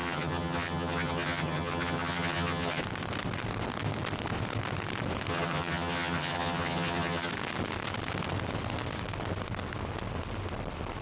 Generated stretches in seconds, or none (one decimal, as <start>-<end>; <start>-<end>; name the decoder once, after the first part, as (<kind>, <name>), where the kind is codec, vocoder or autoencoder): 0.0-2.8 (vocoder, HiFi-GAN); 5.3-7.3